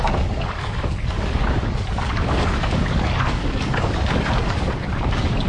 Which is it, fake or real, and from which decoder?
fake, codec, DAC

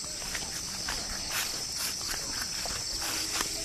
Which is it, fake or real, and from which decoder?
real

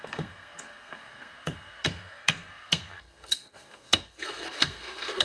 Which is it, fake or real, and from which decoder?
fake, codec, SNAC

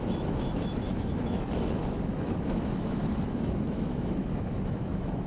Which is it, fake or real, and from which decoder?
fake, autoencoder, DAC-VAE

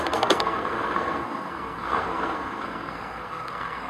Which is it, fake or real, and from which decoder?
fake, codec, SNAC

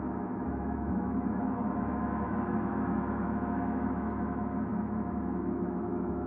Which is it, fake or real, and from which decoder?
fake, autoencoder, DAC-VAE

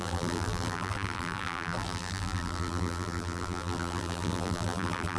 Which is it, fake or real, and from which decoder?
fake, vocoder, BigVGAN v2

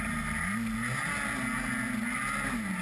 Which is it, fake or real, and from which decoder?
real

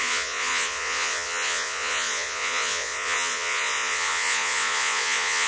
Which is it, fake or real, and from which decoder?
fake, vocoder, Vocos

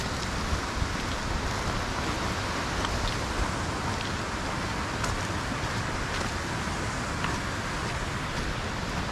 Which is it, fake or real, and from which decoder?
real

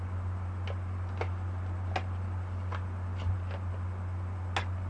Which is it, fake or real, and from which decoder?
real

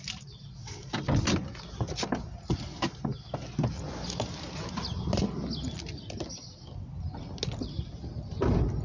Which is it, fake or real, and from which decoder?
real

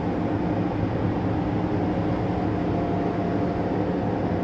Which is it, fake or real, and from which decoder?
real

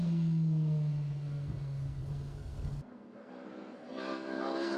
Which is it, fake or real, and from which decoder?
fake, codec, SNAC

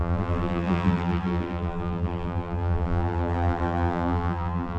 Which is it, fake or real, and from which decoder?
fake, vocoder, BigVGAN v2